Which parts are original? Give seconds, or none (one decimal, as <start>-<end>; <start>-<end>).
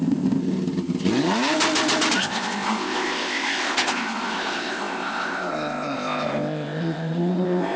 0.4-2.2